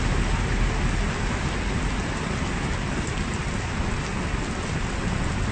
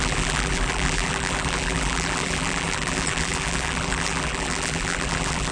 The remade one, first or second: second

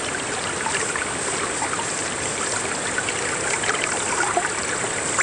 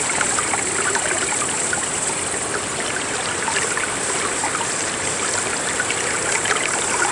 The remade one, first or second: second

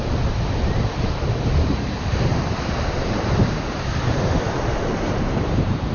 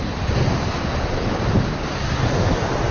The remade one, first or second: first